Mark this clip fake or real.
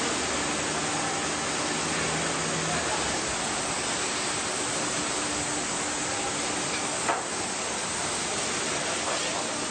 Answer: real